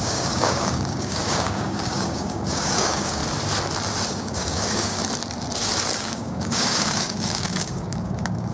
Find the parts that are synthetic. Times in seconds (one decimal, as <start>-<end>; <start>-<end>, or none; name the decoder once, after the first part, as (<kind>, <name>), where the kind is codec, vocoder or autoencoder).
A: 0.0-3.2 (codec, DAC); 4.1-5.0; 6.0-8.5